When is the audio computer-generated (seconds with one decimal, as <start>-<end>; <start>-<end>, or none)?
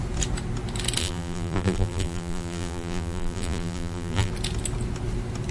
1.0-4.3